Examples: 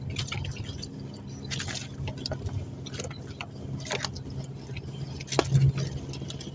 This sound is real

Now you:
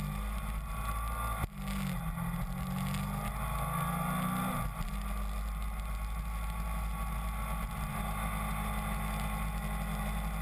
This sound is real